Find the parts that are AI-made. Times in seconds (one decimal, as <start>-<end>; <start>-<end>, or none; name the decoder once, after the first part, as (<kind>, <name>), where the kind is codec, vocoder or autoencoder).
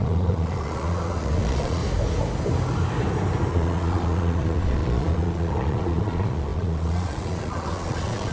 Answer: 0.0-1.8 (vocoder, Vocos); 3.5-8.3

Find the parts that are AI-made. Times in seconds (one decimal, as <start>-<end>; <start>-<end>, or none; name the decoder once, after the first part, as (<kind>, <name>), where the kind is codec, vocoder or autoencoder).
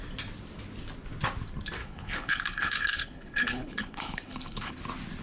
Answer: 1.8-4.7 (codec, HILCodec)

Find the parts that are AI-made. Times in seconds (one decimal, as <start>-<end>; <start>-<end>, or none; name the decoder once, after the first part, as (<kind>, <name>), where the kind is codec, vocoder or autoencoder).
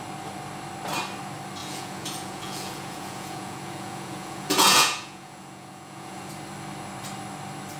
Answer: 1.6-6.3 (vocoder, Vocos)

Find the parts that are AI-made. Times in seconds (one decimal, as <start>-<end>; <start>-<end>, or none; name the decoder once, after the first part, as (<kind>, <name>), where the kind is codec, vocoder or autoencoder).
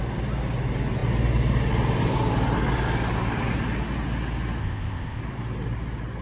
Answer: 4.6-5.2 (codec, ZipCodec)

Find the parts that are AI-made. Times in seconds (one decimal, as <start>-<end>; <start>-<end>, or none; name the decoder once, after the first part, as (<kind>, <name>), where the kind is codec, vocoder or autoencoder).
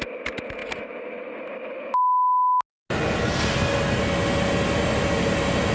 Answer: none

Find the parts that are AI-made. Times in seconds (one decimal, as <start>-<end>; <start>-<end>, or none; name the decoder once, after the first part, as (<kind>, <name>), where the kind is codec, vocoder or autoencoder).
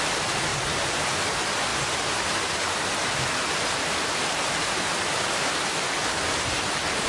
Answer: none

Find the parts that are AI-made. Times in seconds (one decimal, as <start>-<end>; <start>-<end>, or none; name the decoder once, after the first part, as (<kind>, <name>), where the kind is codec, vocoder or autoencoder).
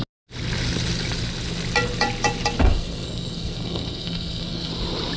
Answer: 2.6-4.7 (codec, SNAC)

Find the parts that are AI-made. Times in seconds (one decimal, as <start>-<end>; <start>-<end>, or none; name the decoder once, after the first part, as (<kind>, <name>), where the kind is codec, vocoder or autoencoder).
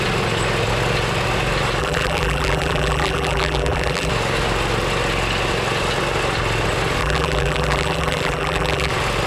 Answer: 1.8-4.1 (vocoder, BigVGAN v2); 7.0-8.9